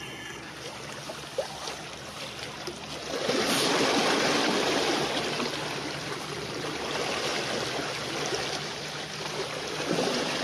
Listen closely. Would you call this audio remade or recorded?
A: recorded